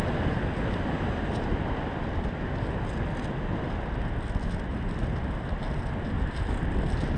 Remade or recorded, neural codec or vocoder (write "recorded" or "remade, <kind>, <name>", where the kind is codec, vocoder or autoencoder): recorded